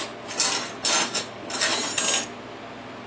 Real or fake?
real